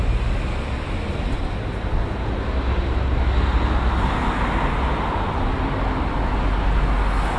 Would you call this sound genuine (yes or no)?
yes